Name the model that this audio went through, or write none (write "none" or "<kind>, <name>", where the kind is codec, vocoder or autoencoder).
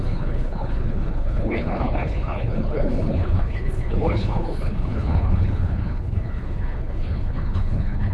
codec, HILCodec